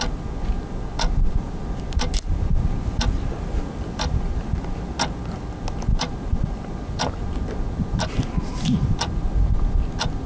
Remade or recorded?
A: recorded